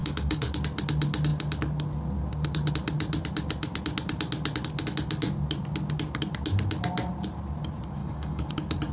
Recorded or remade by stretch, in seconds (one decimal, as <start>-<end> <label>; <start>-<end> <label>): 0.0-0.5 remade; 0.5-8.0 recorded; 8.0-8.5 remade; 8.5-8.9 recorded